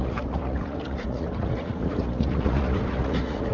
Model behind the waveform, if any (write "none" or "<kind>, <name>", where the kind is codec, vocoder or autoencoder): vocoder, Vocos